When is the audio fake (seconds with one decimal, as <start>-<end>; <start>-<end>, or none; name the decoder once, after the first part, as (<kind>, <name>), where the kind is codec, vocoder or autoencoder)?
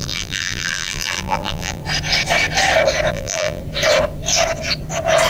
0.0-1.8 (vocoder, BigVGAN v2); 3.1-3.6